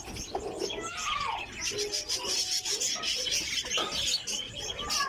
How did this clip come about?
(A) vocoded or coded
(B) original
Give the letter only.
B